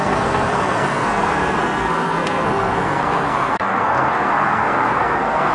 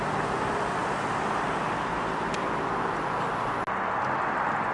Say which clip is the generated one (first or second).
first